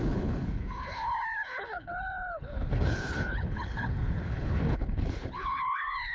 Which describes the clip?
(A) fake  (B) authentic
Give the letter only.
A